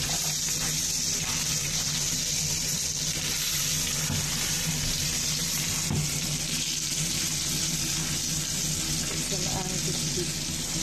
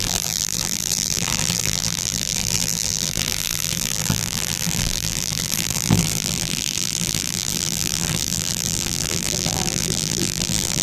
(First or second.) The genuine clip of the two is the first